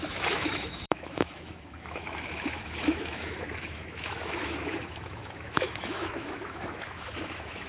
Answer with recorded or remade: remade